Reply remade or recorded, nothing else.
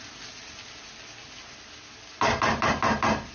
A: recorded